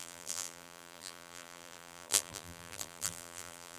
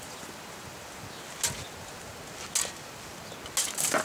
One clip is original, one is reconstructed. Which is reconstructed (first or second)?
first